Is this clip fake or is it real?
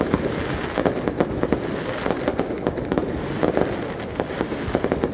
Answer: real